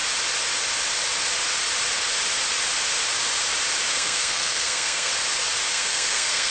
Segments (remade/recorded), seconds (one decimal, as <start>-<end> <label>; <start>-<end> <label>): 0.0-3.9 recorded; 3.9-5.1 remade; 5.1-5.7 recorded; 5.7-6.5 remade